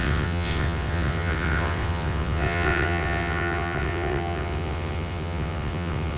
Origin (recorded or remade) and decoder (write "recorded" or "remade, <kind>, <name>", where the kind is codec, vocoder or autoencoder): remade, vocoder, WaveNeXt